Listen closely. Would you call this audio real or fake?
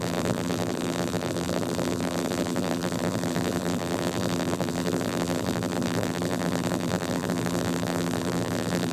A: fake